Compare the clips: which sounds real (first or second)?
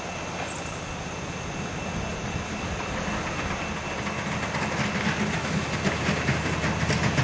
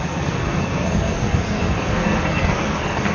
first